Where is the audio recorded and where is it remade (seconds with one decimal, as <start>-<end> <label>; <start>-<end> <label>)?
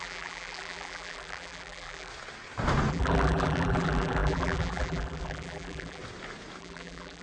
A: 0.0-2.1 remade; 2.1-2.9 recorded; 2.9-6.0 remade; 6.0-6.6 recorded; 6.6-7.2 remade